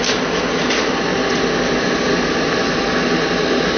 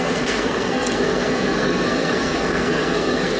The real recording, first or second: first